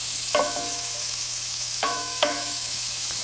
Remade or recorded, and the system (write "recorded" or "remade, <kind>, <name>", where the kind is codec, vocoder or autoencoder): remade, autoencoder, DAC-VAE